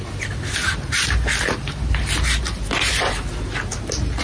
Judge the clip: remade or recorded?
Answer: recorded